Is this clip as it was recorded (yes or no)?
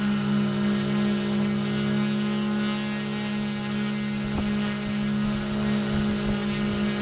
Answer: yes